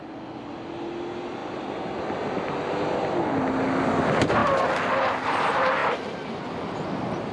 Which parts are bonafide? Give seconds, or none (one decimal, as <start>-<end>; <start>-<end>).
0.0-7.3